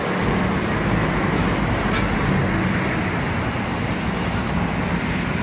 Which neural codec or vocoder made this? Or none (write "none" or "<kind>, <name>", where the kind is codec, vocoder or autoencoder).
none